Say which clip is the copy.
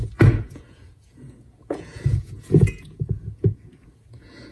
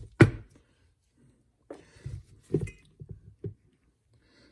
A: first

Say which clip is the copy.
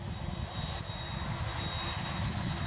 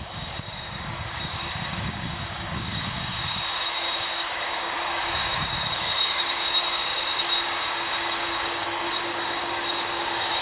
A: second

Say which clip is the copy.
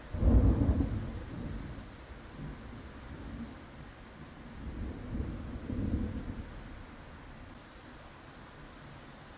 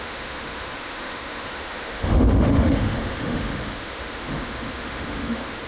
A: second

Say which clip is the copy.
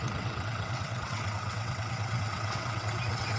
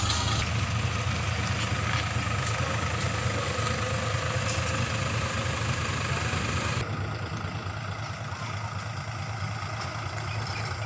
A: first